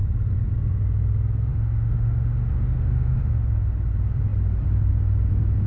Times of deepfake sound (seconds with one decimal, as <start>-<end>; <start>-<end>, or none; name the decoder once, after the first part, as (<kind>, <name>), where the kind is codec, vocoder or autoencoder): 1.5-3.3 (autoencoder, DAC-VAE)